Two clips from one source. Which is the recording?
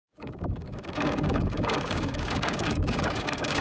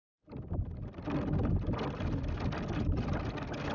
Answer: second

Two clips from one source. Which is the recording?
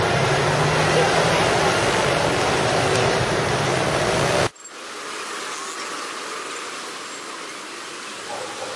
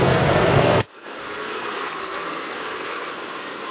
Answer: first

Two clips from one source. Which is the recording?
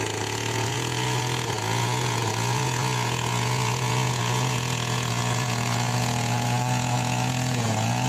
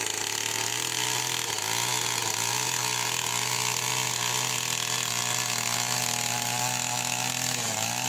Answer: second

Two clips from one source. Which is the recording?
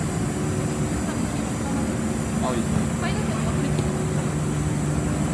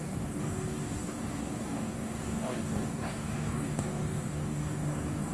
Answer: first